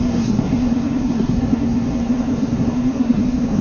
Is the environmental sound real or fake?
fake